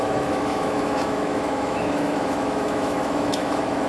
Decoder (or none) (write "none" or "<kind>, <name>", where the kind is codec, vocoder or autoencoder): autoencoder, DAC-VAE